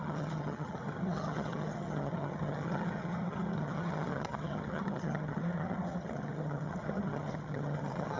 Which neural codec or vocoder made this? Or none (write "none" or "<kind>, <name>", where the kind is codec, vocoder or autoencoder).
vocoder, HiFi-GAN